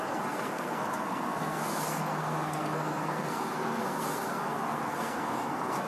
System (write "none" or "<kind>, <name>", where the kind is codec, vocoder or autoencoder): codec, SNAC